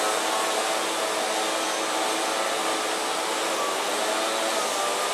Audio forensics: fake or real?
real